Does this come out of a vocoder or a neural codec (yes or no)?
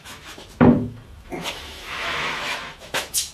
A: yes